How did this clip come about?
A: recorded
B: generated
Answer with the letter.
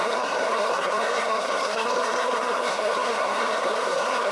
B